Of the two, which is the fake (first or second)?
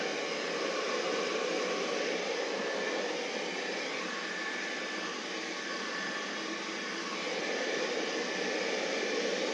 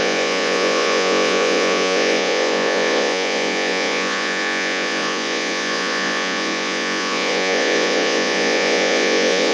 second